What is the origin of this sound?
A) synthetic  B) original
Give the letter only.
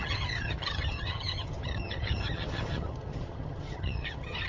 A